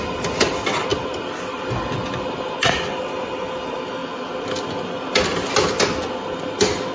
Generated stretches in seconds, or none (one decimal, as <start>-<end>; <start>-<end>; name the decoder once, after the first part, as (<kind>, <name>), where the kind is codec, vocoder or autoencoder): none